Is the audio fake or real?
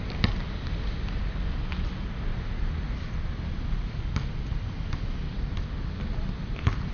real